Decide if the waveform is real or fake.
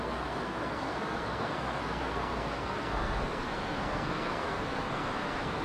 fake